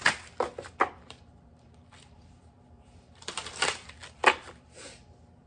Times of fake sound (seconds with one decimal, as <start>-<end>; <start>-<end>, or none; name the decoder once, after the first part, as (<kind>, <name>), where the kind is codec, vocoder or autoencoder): 0.0-5.5 (vocoder, BigVGAN v2)

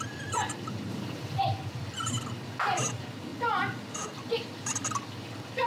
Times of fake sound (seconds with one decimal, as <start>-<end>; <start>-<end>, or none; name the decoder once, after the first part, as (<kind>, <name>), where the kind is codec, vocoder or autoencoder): 0.9-1.4 (vocoder, BigVGAN v2)

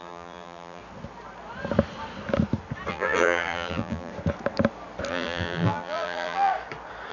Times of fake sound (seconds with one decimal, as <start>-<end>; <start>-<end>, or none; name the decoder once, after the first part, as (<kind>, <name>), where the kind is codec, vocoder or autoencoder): 0.0-0.8 (vocoder, BigVGAN v2); 2.9-4.1; 5.1-6.5